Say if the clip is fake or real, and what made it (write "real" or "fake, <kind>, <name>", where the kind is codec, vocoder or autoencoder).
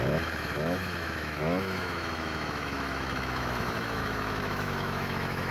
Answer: fake, autoencoder, DAC-VAE